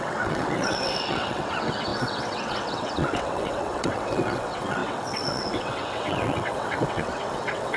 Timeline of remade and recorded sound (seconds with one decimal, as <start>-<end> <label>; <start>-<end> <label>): 0.0-7.8 remade